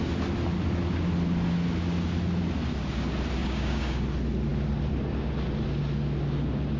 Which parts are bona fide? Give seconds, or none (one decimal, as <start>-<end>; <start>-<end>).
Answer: 0.0-3.4; 4.0-6.8